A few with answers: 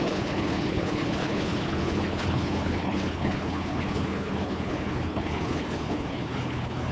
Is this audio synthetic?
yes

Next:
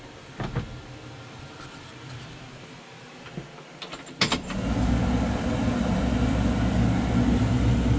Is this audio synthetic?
no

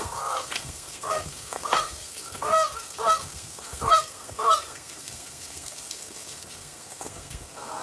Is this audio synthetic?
yes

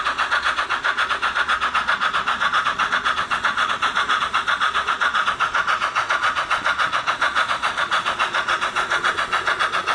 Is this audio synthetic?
yes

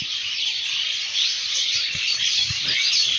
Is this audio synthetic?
yes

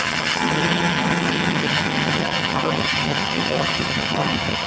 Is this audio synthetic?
yes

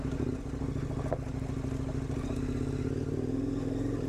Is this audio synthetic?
no